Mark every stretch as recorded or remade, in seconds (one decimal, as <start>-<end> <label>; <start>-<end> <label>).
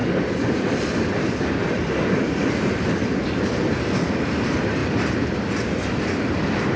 0.0-2.8 remade; 2.8-4.8 recorded; 4.8-6.8 remade